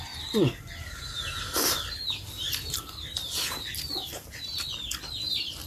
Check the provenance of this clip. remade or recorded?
recorded